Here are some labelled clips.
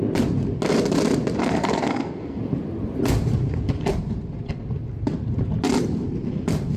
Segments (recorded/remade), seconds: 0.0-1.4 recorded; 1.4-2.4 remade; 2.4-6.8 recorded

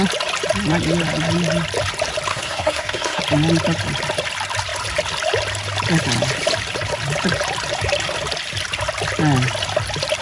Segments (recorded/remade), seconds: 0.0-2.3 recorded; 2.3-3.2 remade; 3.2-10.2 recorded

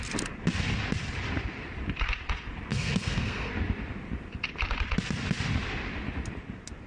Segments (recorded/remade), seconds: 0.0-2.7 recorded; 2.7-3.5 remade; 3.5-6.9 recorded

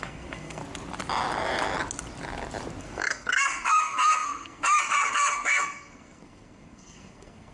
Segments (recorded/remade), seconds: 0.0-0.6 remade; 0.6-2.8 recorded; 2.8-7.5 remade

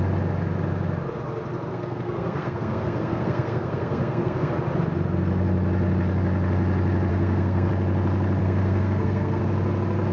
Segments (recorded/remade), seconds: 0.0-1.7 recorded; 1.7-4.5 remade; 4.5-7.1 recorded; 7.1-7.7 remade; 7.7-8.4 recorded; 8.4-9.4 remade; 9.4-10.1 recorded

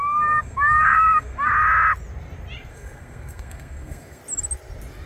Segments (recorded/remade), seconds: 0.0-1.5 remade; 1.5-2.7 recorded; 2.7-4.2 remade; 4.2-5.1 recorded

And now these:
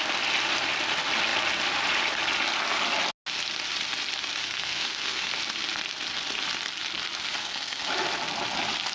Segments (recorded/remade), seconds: 0.0-4.4 recorded; 4.4-5.3 remade; 5.3-7.4 recorded; 7.4-7.9 remade; 7.9-8.9 recorded

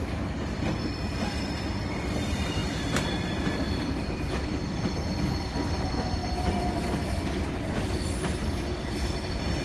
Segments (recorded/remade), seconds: 0.0-9.6 recorded